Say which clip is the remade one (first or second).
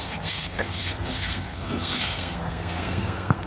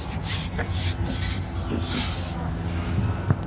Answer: first